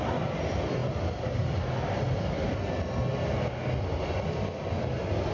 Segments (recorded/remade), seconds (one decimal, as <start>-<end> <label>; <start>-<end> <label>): 0.0-5.3 recorded